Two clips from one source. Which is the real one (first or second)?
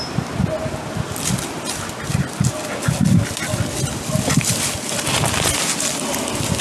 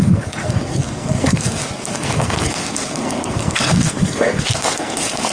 first